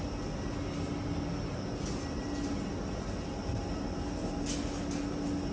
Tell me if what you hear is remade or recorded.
recorded